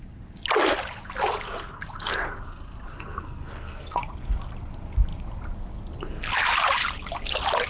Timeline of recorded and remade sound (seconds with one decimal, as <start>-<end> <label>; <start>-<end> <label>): 0.0-2.9 recorded; 2.9-4.0 remade; 4.0-7.7 recorded